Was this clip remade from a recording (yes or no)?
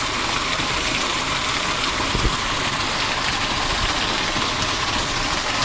no